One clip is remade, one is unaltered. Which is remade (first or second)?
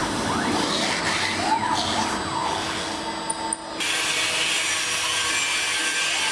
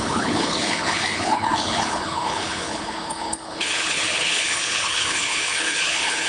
second